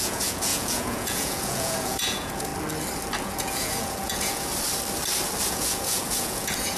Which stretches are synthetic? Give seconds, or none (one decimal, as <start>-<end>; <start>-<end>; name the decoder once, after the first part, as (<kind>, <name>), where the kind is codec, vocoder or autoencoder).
0.0-2.5 (vocoder, Vocos); 3.2-4.5; 5.5-6.8